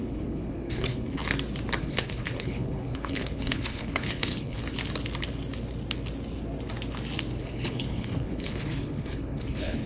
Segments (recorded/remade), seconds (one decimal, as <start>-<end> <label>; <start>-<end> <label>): 0.0-1.2 remade; 1.2-1.8 recorded; 1.8-4.6 remade; 4.6-7.4 recorded; 7.4-9.9 remade